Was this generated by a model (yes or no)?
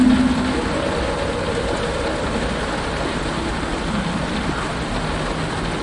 no